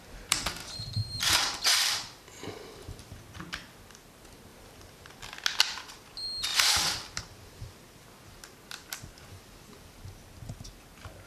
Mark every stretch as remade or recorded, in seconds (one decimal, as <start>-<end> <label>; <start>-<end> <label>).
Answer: 0.0-0.6 recorded; 0.6-3.2 remade; 3.2-4.5 recorded; 4.5-5.1 remade; 5.1-6.5 recorded; 6.5-7.2 remade; 7.2-11.3 recorded